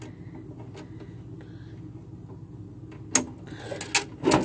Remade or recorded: recorded